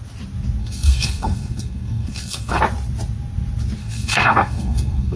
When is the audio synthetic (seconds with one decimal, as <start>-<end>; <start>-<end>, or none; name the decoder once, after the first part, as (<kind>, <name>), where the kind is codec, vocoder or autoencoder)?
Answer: 0.6-2.6 (codec, SNAC); 3.8-5.2

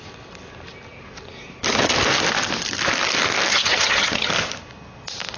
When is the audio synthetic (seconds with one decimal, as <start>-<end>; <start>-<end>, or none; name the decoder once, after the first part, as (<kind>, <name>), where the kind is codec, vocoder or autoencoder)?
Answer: 3.5-4.3 (vocoder, HiFi-GAN)

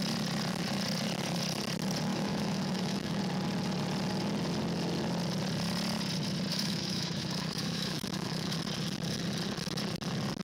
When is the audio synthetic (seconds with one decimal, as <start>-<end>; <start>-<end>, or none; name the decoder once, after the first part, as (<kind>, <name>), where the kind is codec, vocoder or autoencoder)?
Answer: 2.1-3.2 (autoencoder, DAC-VAE); 6.5-8.6

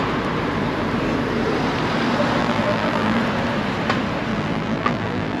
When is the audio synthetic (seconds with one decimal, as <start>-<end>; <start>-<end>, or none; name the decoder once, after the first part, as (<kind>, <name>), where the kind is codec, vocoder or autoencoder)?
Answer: 2.4-3.2 (vocoder, BigVGAN v2); 4.3-5.4

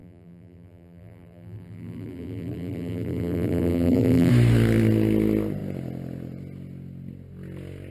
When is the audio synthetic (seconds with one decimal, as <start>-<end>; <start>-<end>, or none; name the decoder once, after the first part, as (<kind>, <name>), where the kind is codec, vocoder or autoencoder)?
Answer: 0.0-4.3 (vocoder, BigVGAN v2)

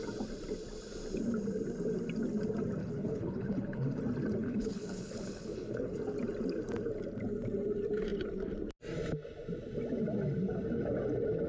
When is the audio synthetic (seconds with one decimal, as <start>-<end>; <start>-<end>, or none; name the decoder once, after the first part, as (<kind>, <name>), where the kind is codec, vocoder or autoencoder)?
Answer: 2.8-4.0 (codec, HILCodec); 4.4-6.0

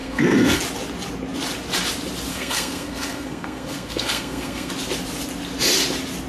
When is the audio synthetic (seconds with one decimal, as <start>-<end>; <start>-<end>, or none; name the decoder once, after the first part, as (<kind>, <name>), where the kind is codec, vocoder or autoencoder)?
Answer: 0.0-0.6 (codec, SNAC); 2.3-4.7